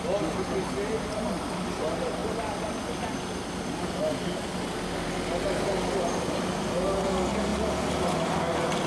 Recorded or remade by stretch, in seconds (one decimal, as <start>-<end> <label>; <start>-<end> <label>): 0.0-8.9 recorded